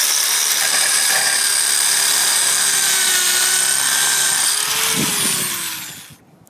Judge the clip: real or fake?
real